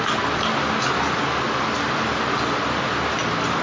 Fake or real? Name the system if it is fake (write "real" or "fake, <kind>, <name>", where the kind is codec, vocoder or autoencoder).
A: real